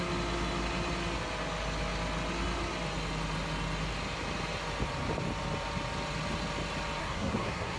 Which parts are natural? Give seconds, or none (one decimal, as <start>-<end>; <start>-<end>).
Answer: 0.0-7.0